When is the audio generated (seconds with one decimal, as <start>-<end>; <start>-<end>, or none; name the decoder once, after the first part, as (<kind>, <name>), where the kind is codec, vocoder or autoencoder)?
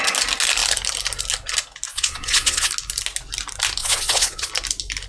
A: 1.9-2.7 (vocoder, Vocos); 3.8-4.5